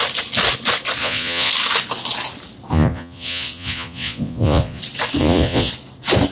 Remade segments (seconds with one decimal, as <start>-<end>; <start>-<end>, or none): 1.0-1.5; 2.7-4.8; 5.2-5.7